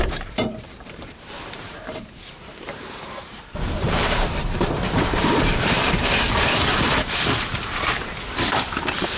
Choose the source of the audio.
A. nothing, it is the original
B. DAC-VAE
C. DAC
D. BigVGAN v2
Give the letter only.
D